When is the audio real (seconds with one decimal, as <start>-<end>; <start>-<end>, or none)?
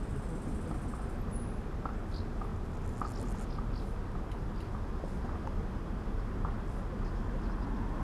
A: 0.0-8.0